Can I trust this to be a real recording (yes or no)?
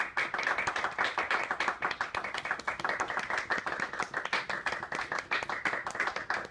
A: yes